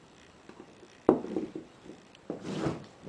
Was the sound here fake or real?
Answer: real